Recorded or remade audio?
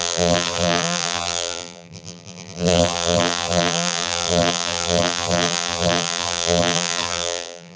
remade